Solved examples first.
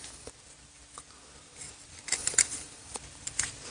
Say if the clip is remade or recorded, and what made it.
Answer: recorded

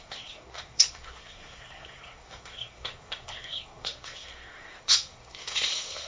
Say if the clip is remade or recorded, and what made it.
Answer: remade, codec, SNAC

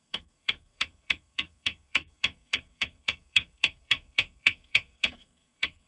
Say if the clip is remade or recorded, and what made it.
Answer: remade, codec, SNAC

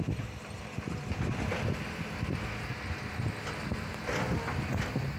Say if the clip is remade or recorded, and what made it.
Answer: recorded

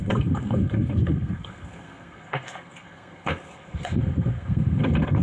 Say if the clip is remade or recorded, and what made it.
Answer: remade, codec, SNAC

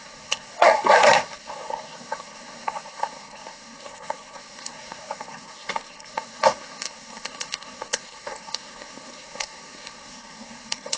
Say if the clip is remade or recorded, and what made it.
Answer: remade, codec, SNAC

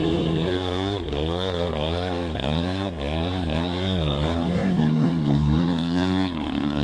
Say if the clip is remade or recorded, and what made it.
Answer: remade, codec, SNAC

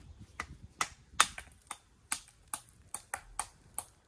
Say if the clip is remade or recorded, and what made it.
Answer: recorded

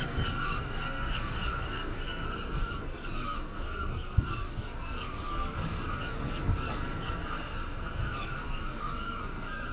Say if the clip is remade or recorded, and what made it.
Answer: remade, codec, SNAC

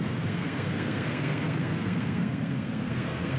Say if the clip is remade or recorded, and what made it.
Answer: remade, codec, SNAC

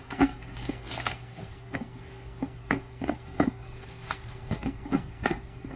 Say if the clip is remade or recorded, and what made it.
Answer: remade, codec, SNAC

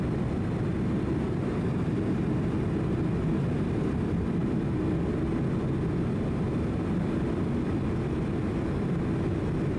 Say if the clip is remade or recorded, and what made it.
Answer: recorded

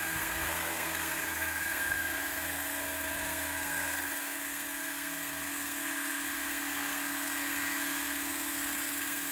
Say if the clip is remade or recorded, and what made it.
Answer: remade, codec, SNAC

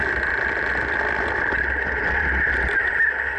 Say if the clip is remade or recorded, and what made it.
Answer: recorded